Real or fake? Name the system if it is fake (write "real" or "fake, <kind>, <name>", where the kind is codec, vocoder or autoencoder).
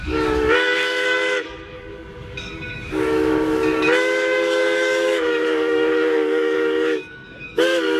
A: fake, codec, DAC